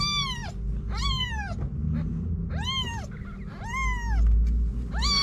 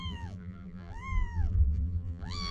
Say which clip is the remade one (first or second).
second